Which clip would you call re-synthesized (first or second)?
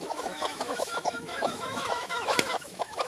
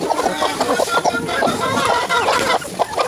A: first